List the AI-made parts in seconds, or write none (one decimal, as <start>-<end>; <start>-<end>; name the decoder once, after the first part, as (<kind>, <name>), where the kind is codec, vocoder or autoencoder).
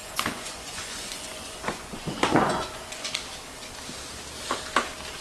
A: 0.0-3.1 (vocoder, Vocos)